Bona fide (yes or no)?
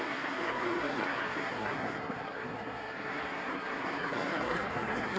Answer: no